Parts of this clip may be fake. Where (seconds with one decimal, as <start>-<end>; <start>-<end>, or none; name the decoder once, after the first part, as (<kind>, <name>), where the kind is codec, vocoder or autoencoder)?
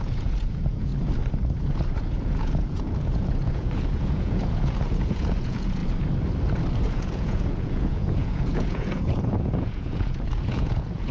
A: 0.0-0.9 (vocoder, Vocos); 1.9-5.8; 6.9-11.1